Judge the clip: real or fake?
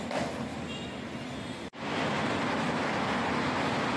real